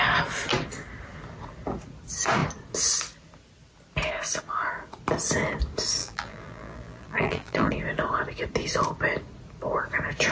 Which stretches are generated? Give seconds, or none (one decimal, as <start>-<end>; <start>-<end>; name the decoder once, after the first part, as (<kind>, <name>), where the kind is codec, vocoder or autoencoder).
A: 6.0-7.7 (vocoder, BigVGAN v2)